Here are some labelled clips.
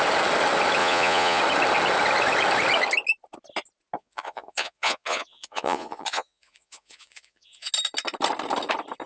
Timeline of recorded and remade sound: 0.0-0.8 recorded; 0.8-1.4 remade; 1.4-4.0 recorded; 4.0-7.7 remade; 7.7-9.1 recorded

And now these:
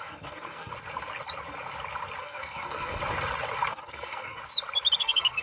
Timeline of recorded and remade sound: 0.0-0.7 remade; 0.7-2.2 recorded; 2.2-3.0 remade; 3.0-3.7 recorded; 3.7-4.4 remade; 4.4-5.0 recorded; 5.0-5.4 remade

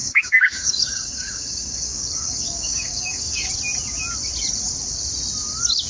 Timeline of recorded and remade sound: 0.0-3.5 remade; 3.5-5.9 recorded

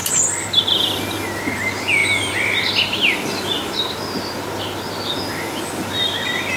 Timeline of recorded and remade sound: 0.0-6.6 recorded

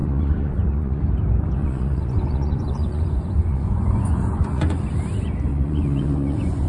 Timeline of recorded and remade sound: 0.0-1.0 remade; 1.0-1.6 recorded; 1.6-4.8 remade; 4.8-5.5 recorded; 5.5-6.7 remade